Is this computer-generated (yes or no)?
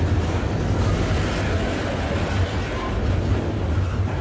no